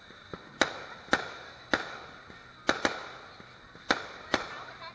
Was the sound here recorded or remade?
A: recorded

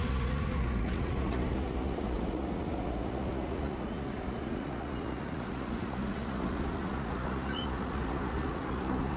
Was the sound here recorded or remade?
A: remade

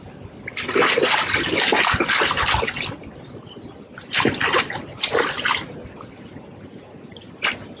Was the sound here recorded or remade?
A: recorded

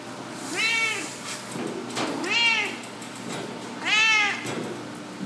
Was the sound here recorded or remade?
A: recorded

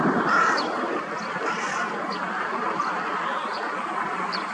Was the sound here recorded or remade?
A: recorded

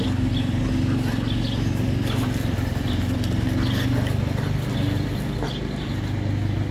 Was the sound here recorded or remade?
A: recorded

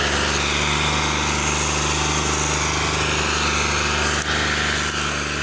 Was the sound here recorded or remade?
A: recorded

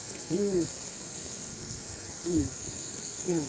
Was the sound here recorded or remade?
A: remade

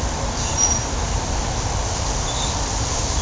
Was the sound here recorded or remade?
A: recorded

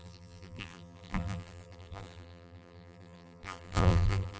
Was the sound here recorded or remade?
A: remade